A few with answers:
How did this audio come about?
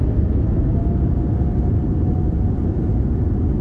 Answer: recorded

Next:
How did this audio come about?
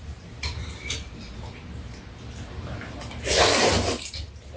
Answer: recorded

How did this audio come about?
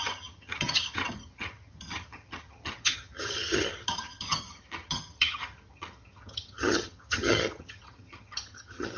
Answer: remade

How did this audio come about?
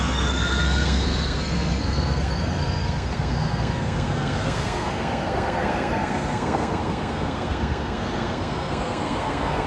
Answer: remade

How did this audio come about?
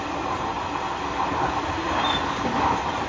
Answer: recorded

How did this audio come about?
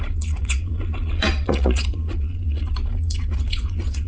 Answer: remade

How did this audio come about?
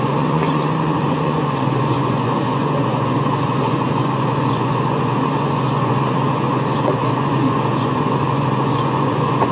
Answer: remade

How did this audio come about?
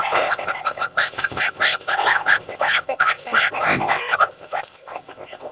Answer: remade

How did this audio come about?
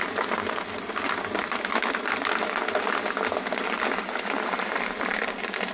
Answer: recorded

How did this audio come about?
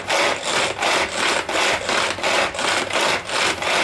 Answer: recorded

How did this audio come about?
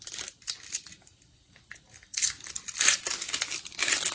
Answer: recorded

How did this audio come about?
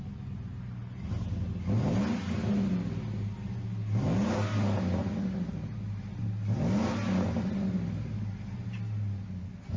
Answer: recorded